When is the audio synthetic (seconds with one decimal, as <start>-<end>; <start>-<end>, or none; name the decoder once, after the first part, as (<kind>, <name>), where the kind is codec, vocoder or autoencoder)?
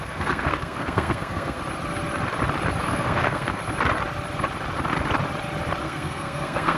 0.0-1.6 (codec, SNAC); 2.8-3.6; 5.8-6.8